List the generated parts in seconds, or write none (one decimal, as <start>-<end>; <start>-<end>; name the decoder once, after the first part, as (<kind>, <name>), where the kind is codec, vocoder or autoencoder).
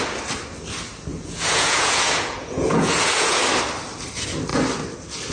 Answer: 1.1-3.4 (vocoder, Vocos)